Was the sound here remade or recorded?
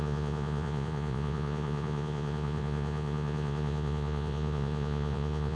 remade